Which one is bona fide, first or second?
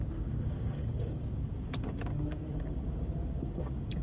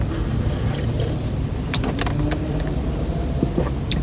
second